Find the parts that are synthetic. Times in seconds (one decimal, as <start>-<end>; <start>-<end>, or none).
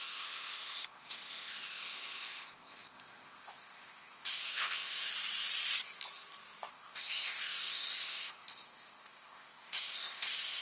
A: 0.0-5.1; 6.7-10.6